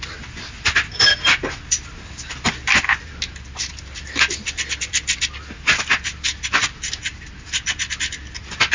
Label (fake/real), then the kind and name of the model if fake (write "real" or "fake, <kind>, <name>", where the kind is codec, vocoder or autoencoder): real